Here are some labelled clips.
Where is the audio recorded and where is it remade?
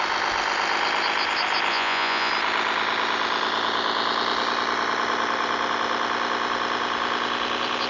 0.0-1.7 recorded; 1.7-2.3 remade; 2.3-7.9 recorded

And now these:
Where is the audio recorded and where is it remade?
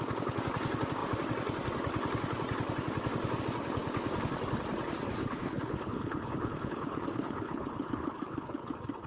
0.0-5.2 recorded; 5.2-8.7 remade; 8.7-9.1 recorded